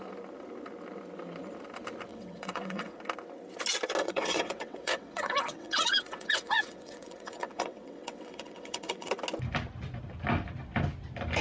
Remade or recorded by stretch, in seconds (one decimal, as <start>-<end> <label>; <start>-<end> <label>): 0.0-2.1 recorded; 2.1-3.0 remade; 3.0-4.0 recorded; 4.0-9.1 remade; 9.1-11.4 recorded